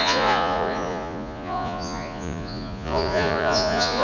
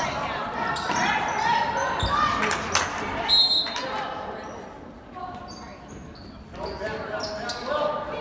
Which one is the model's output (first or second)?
first